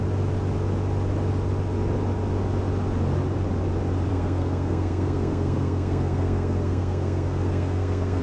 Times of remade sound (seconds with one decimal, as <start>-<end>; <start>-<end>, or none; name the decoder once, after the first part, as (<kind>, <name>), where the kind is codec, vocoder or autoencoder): 4.1-8.2 (codec, SNAC)